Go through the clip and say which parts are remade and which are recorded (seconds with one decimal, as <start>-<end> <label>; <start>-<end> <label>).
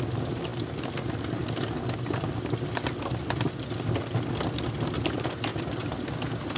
0.0-6.6 recorded